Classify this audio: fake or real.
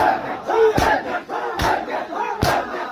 fake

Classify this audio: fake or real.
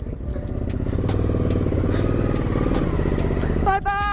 real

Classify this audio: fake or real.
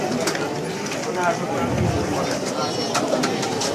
real